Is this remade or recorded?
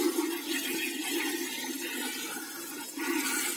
recorded